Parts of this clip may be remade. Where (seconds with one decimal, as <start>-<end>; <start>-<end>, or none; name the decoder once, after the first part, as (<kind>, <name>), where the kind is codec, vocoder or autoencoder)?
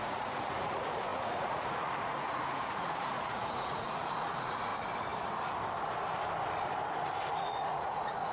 0.0-4.7 (vocoder, Vocos); 7.3-8.3